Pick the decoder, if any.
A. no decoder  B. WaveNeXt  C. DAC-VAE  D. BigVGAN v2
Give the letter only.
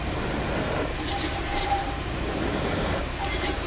D